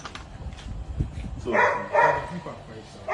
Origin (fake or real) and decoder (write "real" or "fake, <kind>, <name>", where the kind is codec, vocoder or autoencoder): real